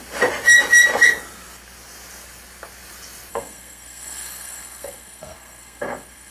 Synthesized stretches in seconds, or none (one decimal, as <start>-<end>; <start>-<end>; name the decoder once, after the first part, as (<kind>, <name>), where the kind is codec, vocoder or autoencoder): 3.3-6.3 (codec, SNAC)